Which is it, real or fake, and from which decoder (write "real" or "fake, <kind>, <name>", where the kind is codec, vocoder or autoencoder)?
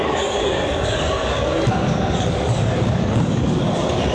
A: fake, codec, DAC